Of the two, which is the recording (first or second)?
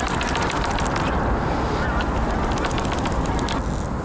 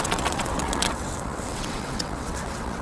first